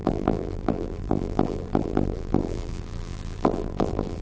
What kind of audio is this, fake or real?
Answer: fake